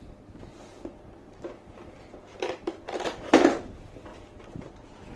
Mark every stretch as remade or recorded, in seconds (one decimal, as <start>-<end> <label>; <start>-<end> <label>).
0.0-0.5 recorded; 0.5-3.6 remade; 3.6-4.1 recorded; 4.1-4.7 remade; 4.7-5.2 recorded